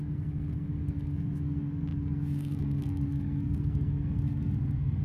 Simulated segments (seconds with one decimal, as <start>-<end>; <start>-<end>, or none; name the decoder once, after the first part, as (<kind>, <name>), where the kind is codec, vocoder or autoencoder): 0.0-5.0 (codec, SNAC)